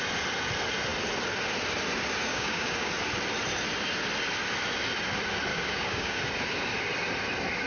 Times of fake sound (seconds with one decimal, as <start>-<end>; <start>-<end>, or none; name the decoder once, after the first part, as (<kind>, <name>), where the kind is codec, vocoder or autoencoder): 2.3-2.9 (codec, DAC); 5.5-6.2